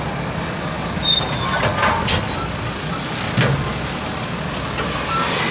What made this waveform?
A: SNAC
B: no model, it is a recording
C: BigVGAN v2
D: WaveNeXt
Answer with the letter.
B